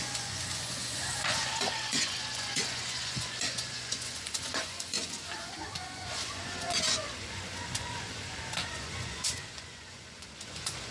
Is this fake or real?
fake